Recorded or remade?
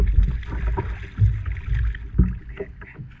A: recorded